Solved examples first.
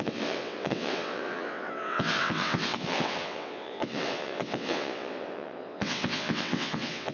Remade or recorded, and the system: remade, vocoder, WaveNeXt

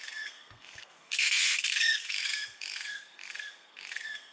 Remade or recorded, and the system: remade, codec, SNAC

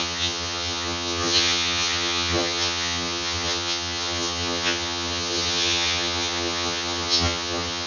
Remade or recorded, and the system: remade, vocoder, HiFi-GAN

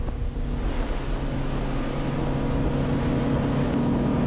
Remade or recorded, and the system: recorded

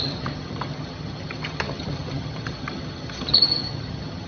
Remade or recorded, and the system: remade, vocoder, HiFi-GAN